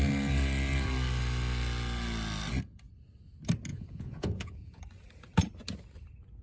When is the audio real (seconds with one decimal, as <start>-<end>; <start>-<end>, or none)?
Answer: 0.0-3.7; 4.8-6.4